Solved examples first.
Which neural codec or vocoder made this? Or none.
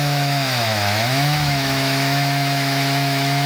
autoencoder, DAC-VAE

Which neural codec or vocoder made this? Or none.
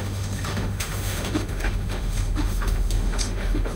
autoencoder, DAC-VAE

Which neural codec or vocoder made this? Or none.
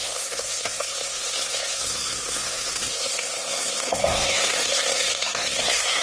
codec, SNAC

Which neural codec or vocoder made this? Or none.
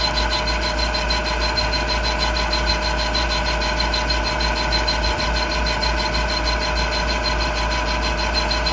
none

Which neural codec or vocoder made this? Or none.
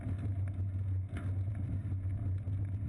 none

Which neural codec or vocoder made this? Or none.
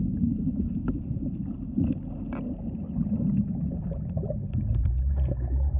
none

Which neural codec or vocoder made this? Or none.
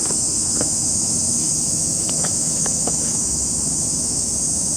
autoencoder, DAC-VAE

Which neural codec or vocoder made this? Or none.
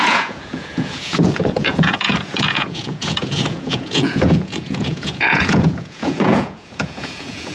vocoder, Vocos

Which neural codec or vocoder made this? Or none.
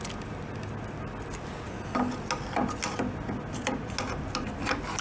none